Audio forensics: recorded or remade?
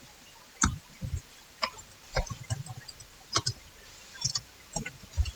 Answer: remade